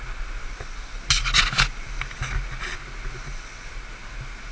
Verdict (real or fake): real